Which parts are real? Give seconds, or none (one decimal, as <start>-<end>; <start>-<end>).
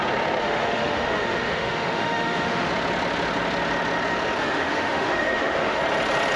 0.0-0.4; 2.7-4.4; 5.8-6.4